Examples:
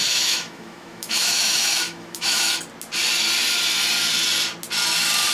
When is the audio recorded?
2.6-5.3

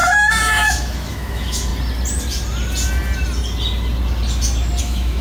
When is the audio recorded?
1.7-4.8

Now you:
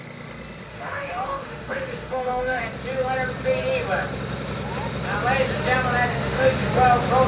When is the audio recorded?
0.0-0.7; 2.6-6.1; 6.7-7.3